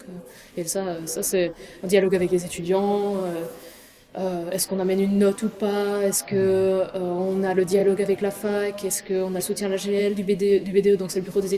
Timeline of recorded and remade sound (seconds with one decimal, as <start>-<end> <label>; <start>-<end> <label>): 0.0-3.2 recorded; 3.2-4.5 remade; 4.5-10.0 recorded; 10.0-11.6 remade